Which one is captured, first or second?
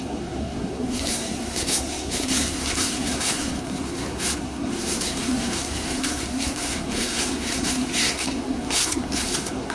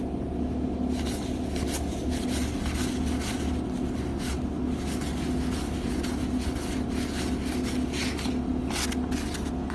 second